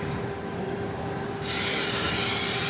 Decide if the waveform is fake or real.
real